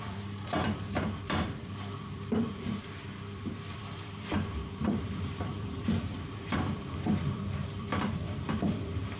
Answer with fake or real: fake